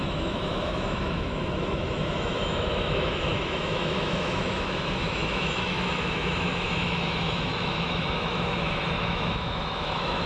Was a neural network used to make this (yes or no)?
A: yes